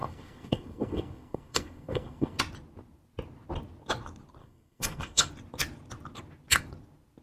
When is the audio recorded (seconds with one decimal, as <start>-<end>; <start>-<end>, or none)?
2.4-4.4; 5.3-7.2